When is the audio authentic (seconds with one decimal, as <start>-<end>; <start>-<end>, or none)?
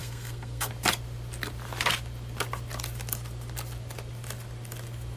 0.7-5.2